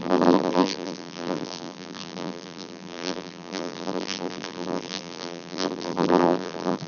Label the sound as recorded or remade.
remade